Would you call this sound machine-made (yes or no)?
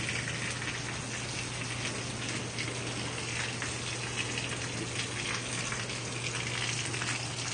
no